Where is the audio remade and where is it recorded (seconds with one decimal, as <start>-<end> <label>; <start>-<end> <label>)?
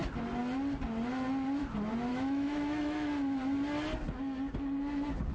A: 0.0-2.1 recorded; 2.1-3.1 remade; 3.1-5.3 recorded